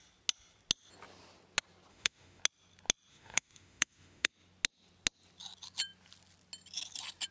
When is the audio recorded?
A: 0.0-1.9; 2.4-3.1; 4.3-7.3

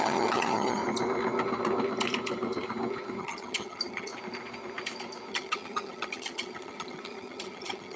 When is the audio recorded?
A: 0.8-3.2; 4.1-5.3